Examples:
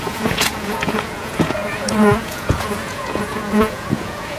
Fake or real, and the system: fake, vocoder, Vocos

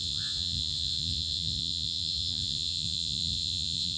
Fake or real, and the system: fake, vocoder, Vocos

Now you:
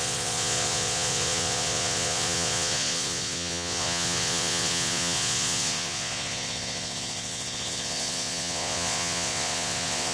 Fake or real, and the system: fake, vocoder, Vocos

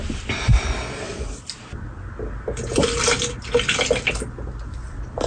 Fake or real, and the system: real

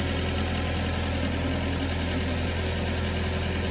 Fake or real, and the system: real